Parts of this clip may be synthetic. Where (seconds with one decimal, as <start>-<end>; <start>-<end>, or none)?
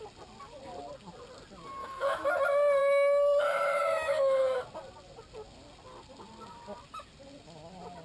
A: 1.8-2.4; 2.8-4.6